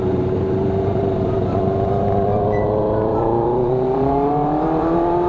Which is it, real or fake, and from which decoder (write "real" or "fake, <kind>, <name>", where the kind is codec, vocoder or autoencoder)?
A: fake, vocoder, BigVGAN v2